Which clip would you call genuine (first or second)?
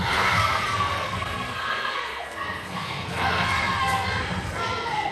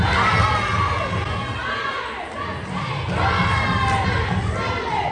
second